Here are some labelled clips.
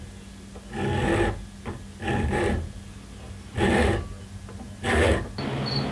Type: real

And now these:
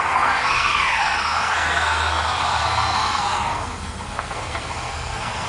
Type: fake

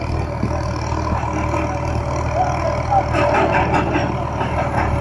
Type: real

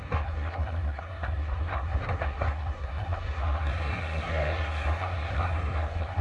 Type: fake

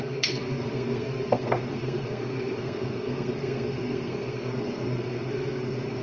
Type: fake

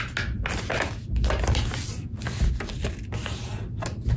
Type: real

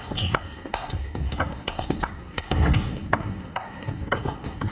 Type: fake